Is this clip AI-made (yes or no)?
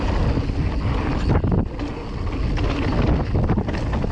no